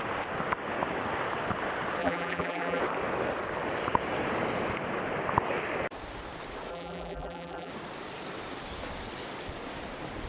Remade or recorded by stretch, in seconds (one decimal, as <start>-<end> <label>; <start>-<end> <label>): 0.0-2.0 recorded; 2.0-2.8 remade; 2.8-6.7 recorded; 6.7-7.7 remade; 7.7-10.3 recorded